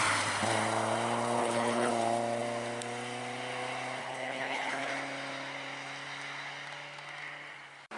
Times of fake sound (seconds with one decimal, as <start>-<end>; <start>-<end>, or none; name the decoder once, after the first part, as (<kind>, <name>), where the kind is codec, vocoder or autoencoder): 1.4-1.9 (codec, HILCodec); 4.0-4.9